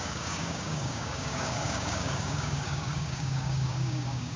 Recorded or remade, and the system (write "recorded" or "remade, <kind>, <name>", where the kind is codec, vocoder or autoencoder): remade, codec, DAC